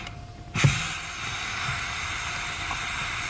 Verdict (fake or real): real